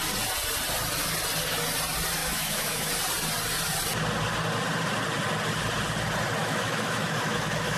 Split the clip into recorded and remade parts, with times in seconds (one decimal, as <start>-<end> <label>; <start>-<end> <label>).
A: 0.0-2.2 recorded; 2.2-2.9 remade; 2.9-6.4 recorded; 6.4-7.8 remade